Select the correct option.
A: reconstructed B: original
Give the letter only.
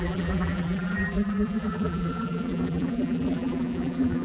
A